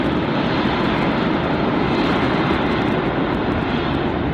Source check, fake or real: real